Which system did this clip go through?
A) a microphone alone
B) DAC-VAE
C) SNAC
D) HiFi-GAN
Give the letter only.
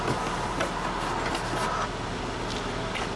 A